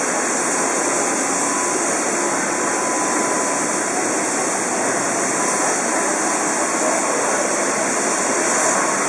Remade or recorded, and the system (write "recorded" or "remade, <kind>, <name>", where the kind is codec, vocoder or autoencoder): recorded